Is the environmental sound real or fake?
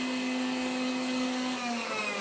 fake